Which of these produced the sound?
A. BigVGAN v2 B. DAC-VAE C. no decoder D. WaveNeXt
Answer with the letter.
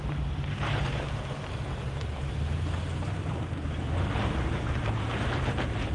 A